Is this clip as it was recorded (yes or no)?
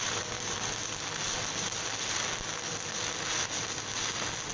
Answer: yes